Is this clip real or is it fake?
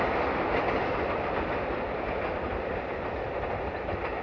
real